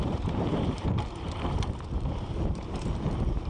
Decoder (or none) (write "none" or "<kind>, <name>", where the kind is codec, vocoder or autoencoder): vocoder, BigVGAN v2